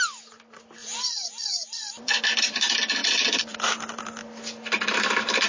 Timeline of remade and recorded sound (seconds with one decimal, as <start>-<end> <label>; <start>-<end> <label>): 0.0-0.8 recorded; 0.8-2.4 remade; 2.4-3.0 recorded; 3.0-4.0 remade; 4.0-5.5 recorded